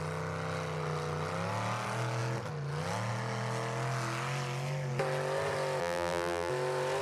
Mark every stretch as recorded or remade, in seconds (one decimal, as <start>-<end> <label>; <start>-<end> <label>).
0.0-5.8 recorded; 5.8-6.5 remade; 6.5-7.0 recorded